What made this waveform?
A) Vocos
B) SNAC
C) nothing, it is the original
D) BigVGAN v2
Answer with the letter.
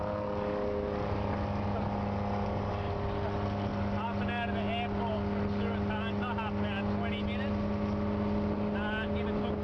C